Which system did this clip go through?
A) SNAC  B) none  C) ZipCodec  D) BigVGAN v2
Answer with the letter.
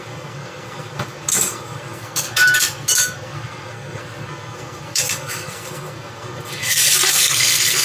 A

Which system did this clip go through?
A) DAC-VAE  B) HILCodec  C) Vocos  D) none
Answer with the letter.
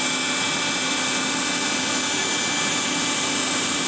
D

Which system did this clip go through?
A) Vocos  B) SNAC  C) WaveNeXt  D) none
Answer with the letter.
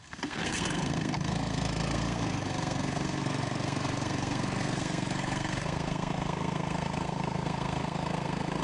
B